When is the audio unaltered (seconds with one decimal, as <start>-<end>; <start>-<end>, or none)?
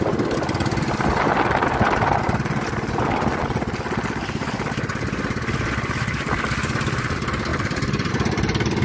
0.0-7.5; 8.1-8.8